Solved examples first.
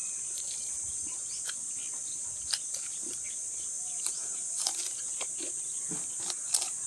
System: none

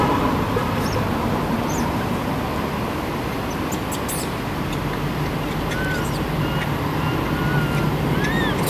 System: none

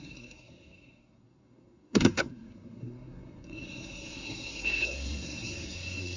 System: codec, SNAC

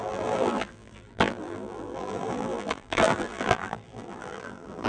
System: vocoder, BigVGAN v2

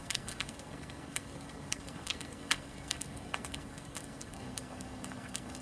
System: codec, SNAC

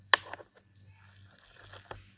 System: none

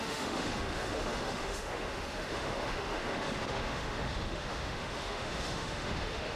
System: autoencoder, DAC-VAE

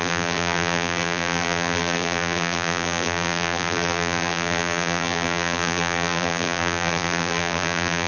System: vocoder, BigVGAN v2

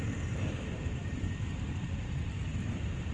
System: none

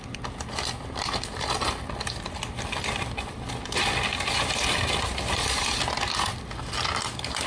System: none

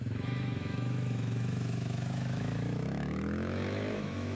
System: autoencoder, DAC-VAE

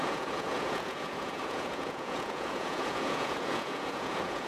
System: vocoder, Vocos